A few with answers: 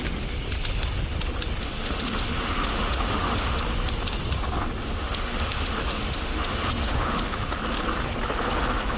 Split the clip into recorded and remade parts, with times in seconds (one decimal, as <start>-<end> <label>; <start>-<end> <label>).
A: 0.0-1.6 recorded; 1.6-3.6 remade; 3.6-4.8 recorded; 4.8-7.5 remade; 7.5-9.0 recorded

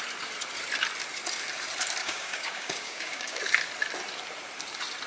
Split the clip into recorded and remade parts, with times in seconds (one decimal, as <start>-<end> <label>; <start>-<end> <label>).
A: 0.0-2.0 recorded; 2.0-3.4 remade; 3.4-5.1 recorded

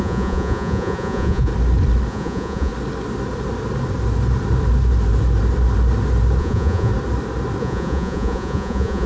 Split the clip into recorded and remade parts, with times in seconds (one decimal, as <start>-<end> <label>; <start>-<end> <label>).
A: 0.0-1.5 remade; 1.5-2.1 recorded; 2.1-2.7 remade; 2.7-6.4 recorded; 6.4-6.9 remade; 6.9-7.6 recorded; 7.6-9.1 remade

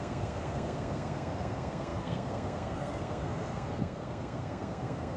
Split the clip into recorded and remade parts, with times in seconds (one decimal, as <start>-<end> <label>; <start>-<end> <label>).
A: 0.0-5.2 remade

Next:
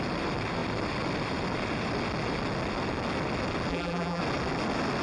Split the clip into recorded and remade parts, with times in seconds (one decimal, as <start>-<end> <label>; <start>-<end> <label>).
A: 0.0-3.7 recorded; 3.7-4.2 remade; 4.2-5.0 recorded

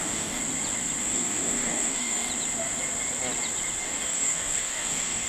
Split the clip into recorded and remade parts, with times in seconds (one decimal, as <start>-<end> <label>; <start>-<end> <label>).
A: 0.0-0.4 remade; 0.4-1.0 recorded; 1.0-2.3 remade; 2.3-3.8 recorded; 3.8-5.3 remade

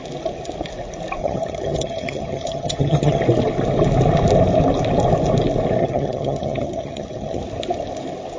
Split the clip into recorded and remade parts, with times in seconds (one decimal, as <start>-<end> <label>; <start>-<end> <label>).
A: 0.0-1.2 recorded; 1.2-3.2 remade; 3.2-5.8 recorded; 5.8-7.4 remade; 7.4-8.4 recorded

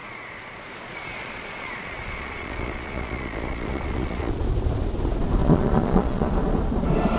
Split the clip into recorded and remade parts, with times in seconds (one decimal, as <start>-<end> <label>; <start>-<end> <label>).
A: 0.0-4.3 remade; 4.3-5.4 recorded; 5.4-6.3 remade; 6.3-7.2 recorded